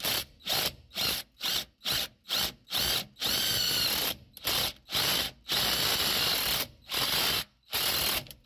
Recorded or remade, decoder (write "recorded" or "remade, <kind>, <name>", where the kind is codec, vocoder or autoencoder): recorded